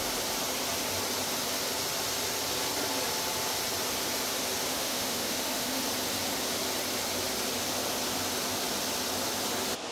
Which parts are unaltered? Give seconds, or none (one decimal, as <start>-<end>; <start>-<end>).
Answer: 0.0-4.7; 5.8-9.9

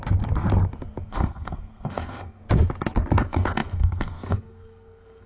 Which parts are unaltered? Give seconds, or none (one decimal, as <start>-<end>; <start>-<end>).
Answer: 0.0-1.1; 2.4-3.2